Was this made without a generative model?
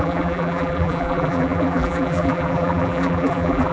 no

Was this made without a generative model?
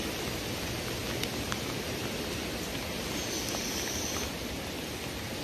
yes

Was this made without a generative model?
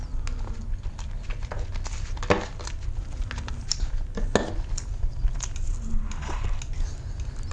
yes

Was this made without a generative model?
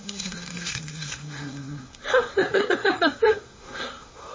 no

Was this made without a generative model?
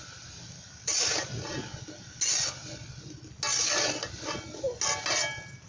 yes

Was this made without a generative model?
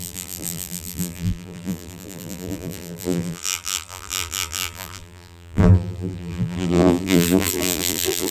no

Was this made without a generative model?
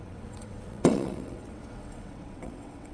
no